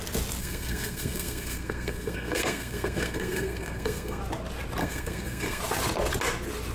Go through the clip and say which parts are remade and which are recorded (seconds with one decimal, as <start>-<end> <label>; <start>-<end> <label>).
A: 0.0-0.4 recorded; 0.4-4.2 remade; 4.2-4.8 recorded; 4.8-5.6 remade; 5.6-6.7 recorded